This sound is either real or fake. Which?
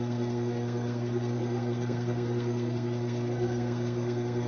fake